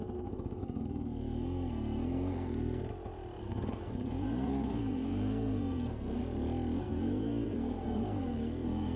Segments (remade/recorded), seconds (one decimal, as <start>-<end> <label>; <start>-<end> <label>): 0.0-2.8 remade; 2.8-3.4 recorded; 3.4-6.2 remade; 6.2-6.8 recorded; 6.8-9.0 remade